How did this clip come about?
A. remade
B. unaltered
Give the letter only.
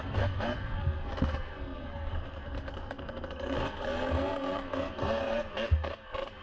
A